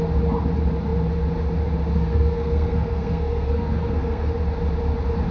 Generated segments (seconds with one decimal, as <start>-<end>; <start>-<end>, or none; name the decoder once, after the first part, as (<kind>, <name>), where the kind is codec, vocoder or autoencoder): 1.9-4.3 (codec, SNAC)